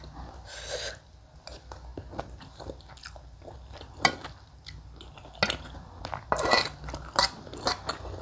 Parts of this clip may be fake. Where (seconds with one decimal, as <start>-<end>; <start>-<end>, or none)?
none

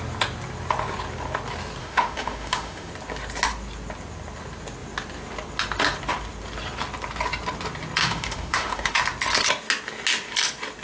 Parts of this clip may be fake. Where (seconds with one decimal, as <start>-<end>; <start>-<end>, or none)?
1.8-2.9; 8.0-9.0

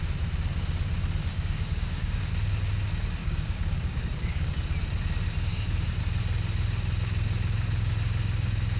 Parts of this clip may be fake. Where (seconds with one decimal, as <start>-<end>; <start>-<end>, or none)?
1.3-2.3; 3.2-4.5; 5.5-6.0

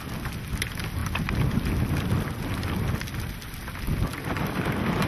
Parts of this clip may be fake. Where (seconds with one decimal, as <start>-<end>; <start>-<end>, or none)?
none